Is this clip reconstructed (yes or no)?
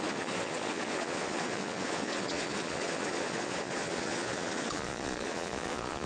yes